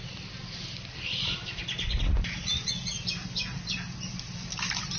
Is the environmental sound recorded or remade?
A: recorded